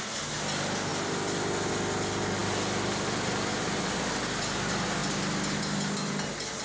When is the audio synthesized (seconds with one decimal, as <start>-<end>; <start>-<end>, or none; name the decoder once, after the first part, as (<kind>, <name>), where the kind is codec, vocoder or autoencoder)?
none